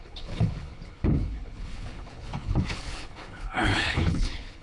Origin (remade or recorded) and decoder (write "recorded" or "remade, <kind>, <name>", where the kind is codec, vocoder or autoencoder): remade, codec, HILCodec